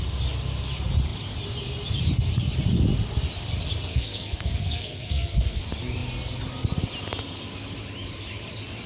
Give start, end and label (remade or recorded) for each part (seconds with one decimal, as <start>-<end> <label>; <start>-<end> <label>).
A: 0.0-3.9 recorded; 3.9-5.6 remade; 5.6-8.9 recorded